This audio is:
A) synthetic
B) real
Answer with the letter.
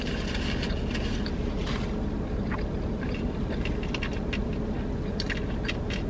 B